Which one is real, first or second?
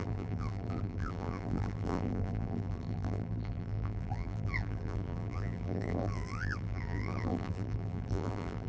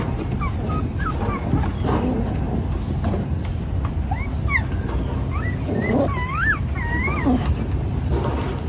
second